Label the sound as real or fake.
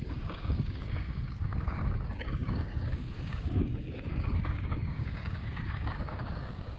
fake